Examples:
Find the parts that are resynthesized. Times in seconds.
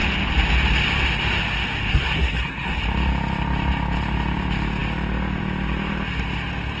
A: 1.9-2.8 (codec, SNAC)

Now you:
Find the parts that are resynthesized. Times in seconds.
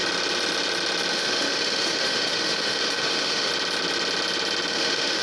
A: 1.1-3.5 (autoencoder, DAC-VAE); 4.7-5.2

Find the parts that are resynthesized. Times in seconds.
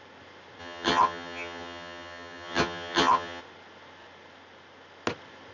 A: 0.6-3.4 (vocoder, HiFi-GAN)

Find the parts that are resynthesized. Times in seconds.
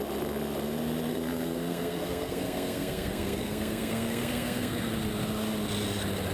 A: 1.1-4.9 (codec, SNAC)